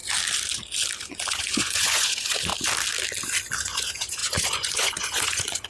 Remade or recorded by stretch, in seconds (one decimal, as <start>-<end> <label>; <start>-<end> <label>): 0.0-1.0 recorded; 1.0-2.5 remade; 2.5-3.6 recorded; 3.6-5.7 remade